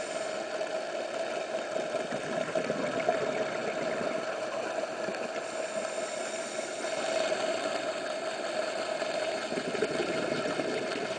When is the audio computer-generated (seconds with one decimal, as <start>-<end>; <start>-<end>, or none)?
none